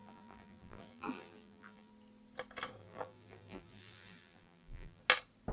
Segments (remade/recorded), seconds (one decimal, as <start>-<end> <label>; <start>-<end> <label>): 0.0-1.9 remade; 1.9-2.8 recorded; 2.8-5.0 remade; 5.0-5.5 recorded